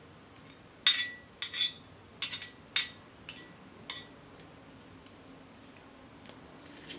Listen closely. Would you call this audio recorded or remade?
recorded